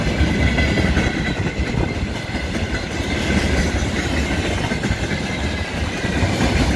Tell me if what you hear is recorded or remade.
recorded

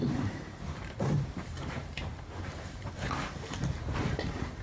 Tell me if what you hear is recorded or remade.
remade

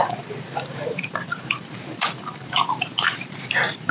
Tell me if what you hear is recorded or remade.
remade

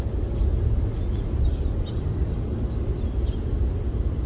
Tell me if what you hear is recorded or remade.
recorded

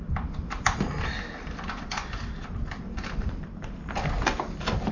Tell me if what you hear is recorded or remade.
recorded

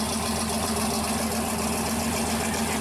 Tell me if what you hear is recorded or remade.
recorded